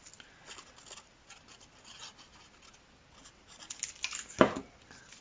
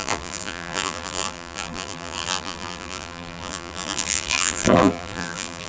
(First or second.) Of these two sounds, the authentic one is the first